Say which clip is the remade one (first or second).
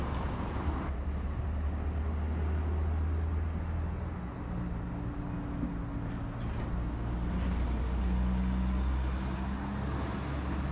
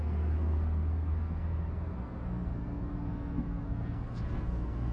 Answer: second